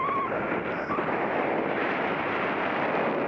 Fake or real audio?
real